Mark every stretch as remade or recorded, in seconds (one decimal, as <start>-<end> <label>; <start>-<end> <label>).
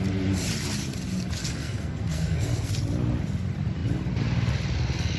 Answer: 0.0-1.4 recorded; 1.4-2.7 remade; 2.7-5.2 recorded